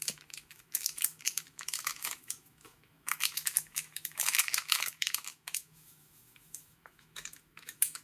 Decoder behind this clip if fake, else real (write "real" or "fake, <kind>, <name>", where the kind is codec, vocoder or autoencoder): fake, autoencoder, DAC-VAE